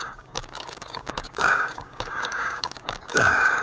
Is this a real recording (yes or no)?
no